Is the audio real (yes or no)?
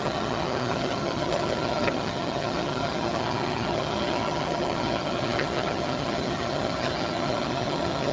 no